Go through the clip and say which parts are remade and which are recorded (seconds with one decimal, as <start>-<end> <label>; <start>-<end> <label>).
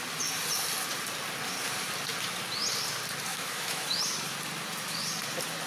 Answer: 0.0-3.3 recorded; 3.3-4.0 remade; 4.0-5.7 recorded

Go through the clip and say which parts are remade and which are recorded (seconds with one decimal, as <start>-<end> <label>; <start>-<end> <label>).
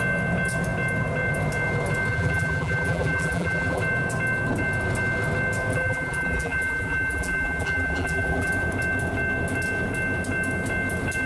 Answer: 0.0-2.1 recorded; 2.1-3.8 remade; 3.8-5.7 recorded; 5.7-8.5 remade; 8.5-11.3 recorded